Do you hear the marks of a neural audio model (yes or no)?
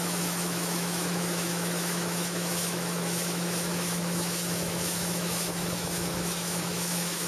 yes